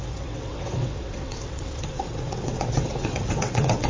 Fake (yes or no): yes